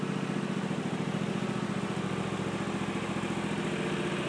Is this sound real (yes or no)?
yes